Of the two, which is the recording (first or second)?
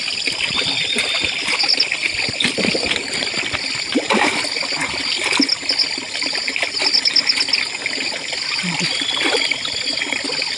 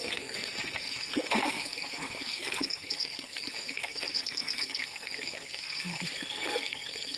first